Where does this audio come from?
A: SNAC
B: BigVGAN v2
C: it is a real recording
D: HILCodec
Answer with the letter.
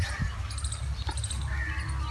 C